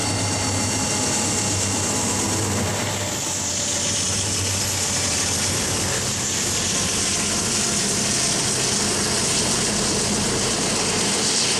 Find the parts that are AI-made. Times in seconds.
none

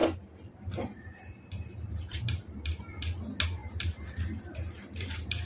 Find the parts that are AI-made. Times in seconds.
0.0-2.8; 3.6-5.5